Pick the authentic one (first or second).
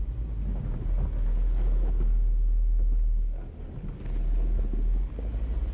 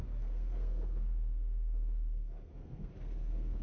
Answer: first